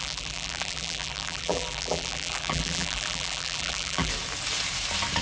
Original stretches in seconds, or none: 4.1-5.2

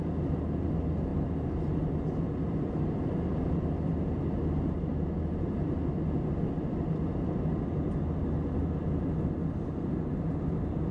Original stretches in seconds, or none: 0.0-4.9; 7.2-10.9

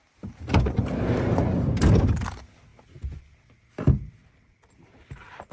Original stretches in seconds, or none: 0.0-5.5